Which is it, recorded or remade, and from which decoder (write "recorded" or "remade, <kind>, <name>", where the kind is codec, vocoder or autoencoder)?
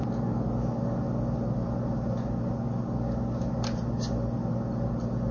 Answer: recorded